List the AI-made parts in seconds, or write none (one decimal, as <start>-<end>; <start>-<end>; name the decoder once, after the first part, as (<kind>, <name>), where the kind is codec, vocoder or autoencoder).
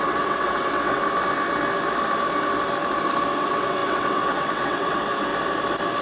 0.0-1.0 (vocoder, WaveNeXt); 3.3-5.3